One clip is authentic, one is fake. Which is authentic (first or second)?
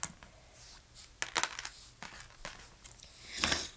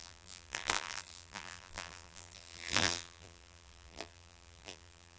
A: first